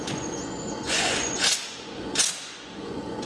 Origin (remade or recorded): remade